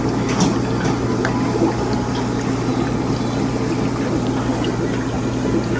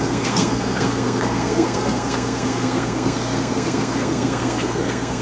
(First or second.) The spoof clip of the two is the second